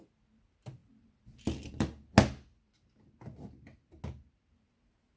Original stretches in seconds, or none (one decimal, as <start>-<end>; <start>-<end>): 0.0-5.2